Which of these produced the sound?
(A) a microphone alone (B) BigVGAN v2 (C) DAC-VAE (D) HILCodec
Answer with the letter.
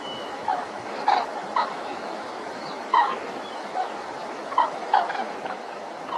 C